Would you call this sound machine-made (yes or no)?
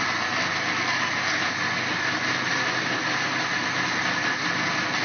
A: no